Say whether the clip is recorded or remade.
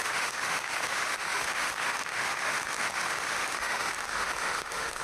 remade